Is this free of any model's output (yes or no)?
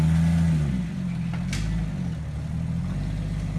yes